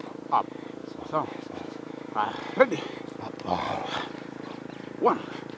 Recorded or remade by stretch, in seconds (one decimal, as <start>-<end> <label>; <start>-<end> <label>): 0.0-0.8 recorded; 0.8-2.3 remade; 2.3-5.6 recorded

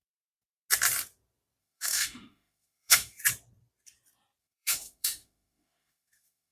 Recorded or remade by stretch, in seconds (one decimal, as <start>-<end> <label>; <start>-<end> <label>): 0.0-1.6 recorded; 1.6-3.2 remade; 3.2-4.4 recorded; 4.4-6.5 remade

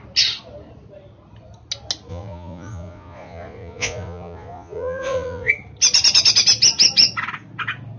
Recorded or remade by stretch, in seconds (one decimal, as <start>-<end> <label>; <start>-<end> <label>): 0.0-2.1 recorded; 2.1-5.5 remade; 5.5-8.0 recorded

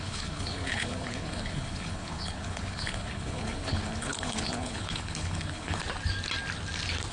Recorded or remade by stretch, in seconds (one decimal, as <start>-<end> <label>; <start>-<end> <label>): 0.0-5.8 remade; 5.8-7.1 recorded

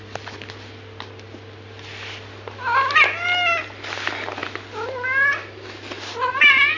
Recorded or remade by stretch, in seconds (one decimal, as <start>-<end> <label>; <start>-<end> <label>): 0.0-6.8 recorded

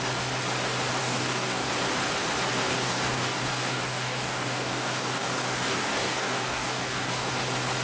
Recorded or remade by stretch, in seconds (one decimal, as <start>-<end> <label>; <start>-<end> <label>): 0.0-1.0 recorded; 1.0-1.7 remade; 1.7-2.6 recorded; 2.6-7.3 remade; 7.3-7.8 recorded